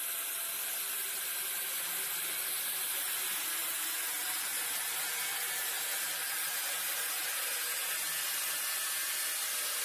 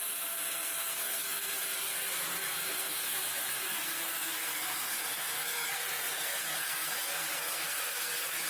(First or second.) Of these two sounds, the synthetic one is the second